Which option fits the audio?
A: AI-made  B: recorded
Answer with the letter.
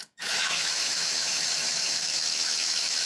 A